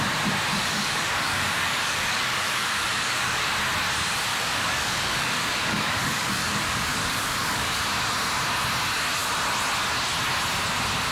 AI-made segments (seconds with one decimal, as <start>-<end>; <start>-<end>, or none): 0.5-3.5; 4.3-7.8